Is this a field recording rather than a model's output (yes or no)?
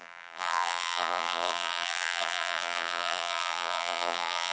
no